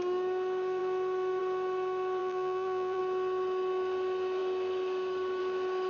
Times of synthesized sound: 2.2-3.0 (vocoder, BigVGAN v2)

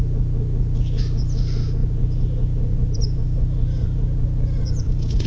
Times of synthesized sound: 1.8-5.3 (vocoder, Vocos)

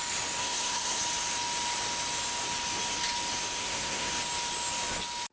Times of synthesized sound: 0.4-1.0 (codec, SNAC); 3.6-4.1

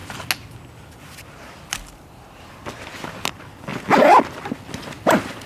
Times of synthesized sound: none

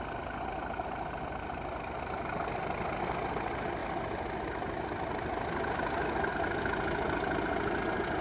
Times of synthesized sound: none

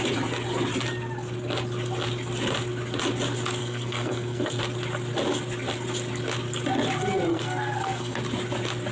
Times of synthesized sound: 3.6-4.6 (codec, SNAC); 7.3-8.2

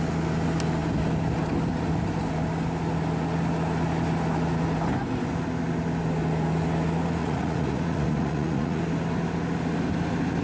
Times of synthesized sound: 7.2-8.8 (vocoder, Vocos)